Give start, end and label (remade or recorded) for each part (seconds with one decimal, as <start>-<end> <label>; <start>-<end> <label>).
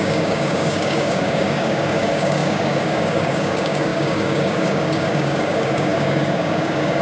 0.0-7.0 remade